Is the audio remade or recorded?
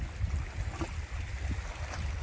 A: recorded